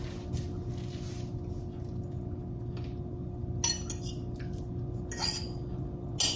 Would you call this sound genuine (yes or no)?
yes